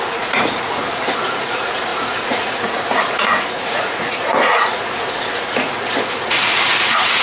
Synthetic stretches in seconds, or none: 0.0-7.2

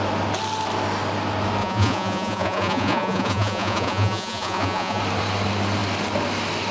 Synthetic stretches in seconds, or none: 1.6-5.0

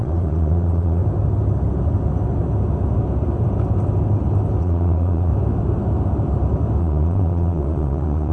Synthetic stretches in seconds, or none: 0.0-1.0; 4.6-5.3; 6.8-8.3

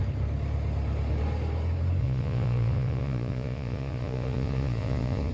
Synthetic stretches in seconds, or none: 2.0-5.3

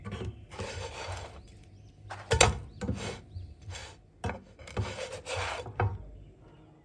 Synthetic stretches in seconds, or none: none

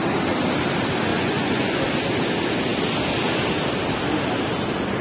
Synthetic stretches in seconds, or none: 1.1-1.9

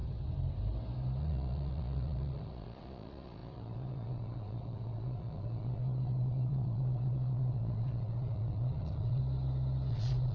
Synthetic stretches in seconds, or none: 1.2-9.2; 9.9-10.3

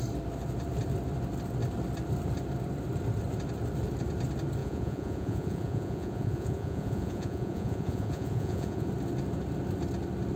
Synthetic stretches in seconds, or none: 4.6-8.9